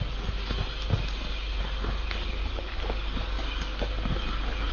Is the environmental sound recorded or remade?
recorded